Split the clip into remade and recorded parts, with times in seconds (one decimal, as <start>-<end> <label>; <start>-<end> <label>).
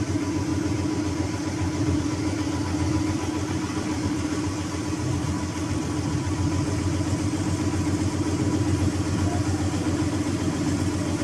0.0-11.2 recorded